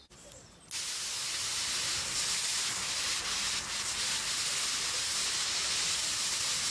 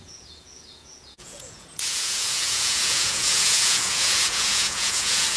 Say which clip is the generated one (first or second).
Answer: second